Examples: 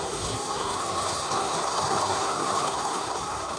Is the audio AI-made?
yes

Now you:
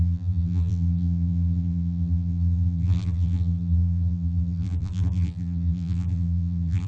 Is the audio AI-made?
yes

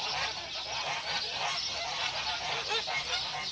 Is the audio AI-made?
no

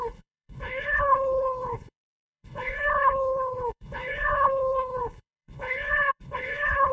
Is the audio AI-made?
yes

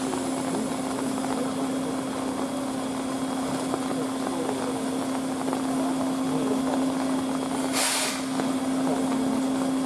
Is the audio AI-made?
no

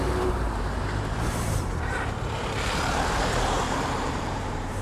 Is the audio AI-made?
yes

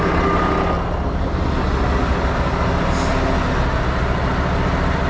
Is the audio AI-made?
no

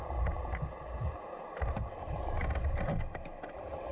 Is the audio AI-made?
no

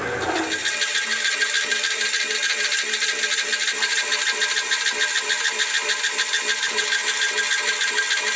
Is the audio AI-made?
no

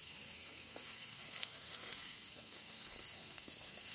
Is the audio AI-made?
yes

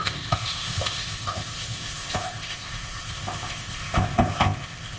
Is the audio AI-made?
yes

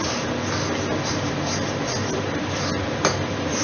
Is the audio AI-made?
no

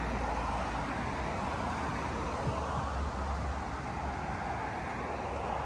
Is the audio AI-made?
no